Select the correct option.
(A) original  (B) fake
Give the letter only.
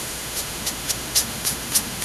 B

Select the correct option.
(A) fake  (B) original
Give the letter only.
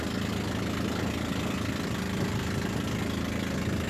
B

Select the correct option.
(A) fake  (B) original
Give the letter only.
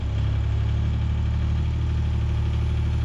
B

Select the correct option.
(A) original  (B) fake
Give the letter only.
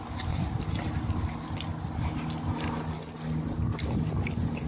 A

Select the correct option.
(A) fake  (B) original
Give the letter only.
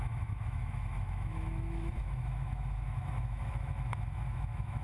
A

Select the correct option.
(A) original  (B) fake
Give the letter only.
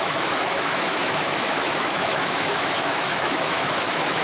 B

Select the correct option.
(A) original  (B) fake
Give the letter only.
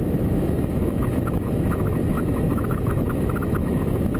B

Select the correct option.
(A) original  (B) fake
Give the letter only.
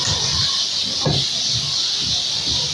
A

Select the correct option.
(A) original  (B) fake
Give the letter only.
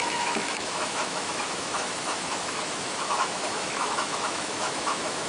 B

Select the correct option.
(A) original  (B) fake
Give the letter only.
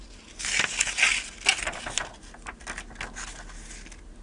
A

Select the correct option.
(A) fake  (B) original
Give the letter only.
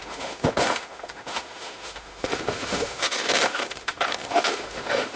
A